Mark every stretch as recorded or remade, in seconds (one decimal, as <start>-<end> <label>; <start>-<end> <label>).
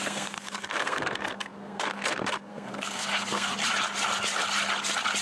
0.0-3.5 remade; 3.5-5.2 recorded